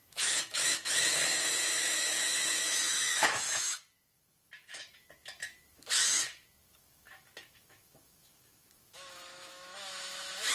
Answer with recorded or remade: remade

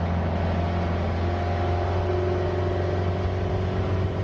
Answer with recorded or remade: recorded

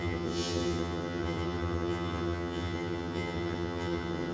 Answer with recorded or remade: remade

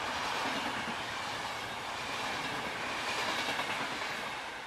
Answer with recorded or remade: recorded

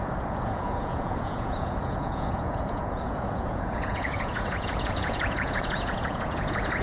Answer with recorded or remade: remade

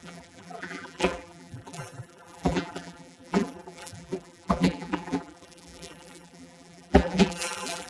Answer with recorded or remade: remade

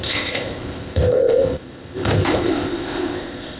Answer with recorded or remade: remade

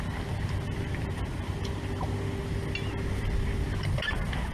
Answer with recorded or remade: recorded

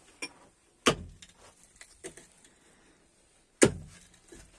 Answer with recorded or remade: recorded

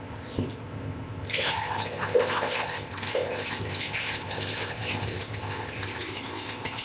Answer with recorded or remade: remade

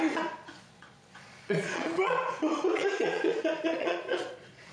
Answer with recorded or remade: remade